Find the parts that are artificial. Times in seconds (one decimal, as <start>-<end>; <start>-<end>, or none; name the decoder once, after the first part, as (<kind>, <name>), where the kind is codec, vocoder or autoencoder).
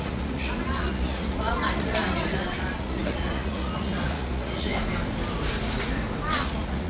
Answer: 0.0-4.7 (vocoder, Vocos); 6.3-6.9